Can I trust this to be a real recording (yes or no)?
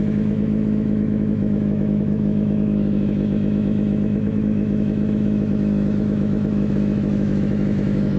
no